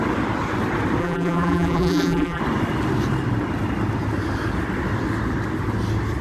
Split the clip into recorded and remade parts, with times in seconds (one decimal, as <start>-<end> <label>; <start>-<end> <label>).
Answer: 0.0-1.0 recorded; 1.0-2.4 remade; 2.4-6.2 recorded